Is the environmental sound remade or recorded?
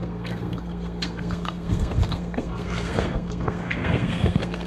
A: remade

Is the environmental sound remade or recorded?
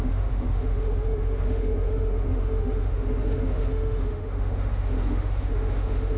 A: remade